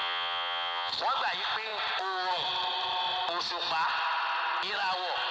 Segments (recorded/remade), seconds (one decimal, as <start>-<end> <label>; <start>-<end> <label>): 0.0-0.9 remade; 0.9-5.3 recorded